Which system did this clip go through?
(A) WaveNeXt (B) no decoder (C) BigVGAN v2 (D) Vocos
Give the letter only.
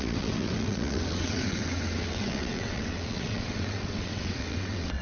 A